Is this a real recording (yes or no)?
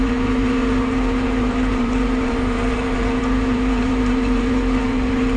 no